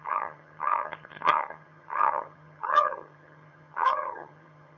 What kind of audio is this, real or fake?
fake